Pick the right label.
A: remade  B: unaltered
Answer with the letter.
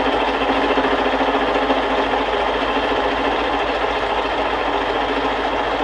B